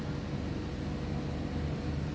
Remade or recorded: recorded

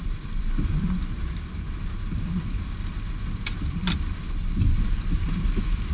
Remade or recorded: remade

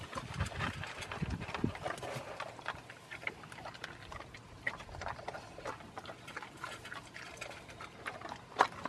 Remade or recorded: recorded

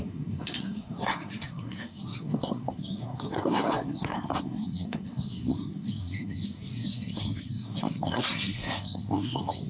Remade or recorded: remade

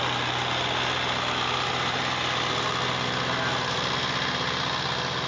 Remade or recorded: recorded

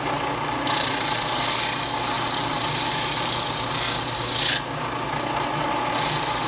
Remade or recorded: recorded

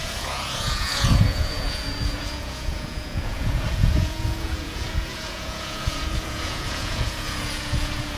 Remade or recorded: remade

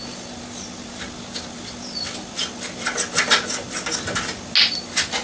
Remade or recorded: recorded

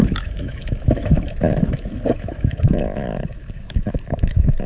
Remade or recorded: remade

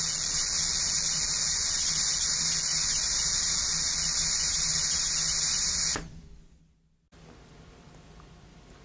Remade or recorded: recorded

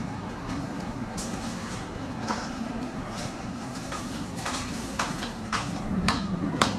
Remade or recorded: remade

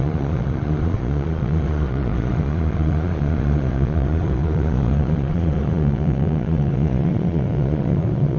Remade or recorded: remade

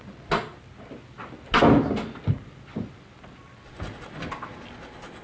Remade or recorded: recorded